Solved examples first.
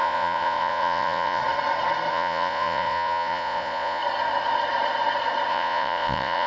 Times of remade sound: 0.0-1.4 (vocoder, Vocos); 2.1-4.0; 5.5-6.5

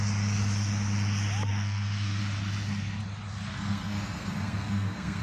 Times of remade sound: 1.5-2.2 (codec, SNAC); 3.5-5.2

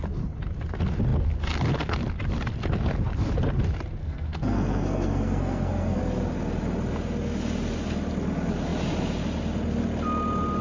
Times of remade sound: 4.0-6.0 (codec, SNAC)

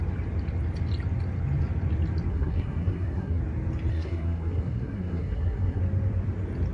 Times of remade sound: 2.3-3.4 (codec, SNAC); 3.9-5.8

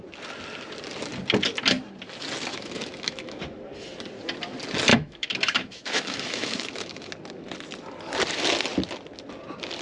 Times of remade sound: 2.5-3.4 (autoencoder, DAC-VAE); 4.9-7.1